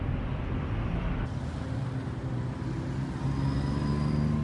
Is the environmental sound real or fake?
real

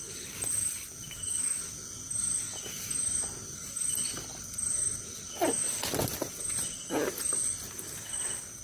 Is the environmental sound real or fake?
real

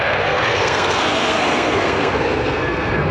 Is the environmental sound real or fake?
fake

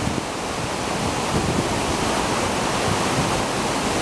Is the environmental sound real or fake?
real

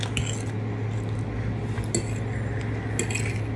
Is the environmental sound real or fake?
real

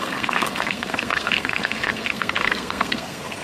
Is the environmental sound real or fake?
fake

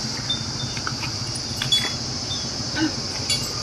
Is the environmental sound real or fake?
real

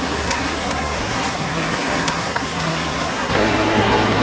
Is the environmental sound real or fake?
fake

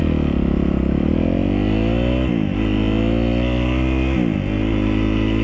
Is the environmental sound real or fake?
real